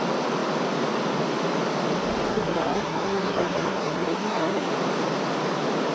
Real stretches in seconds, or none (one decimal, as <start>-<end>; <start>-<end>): 0.0-2.3; 4.7-5.9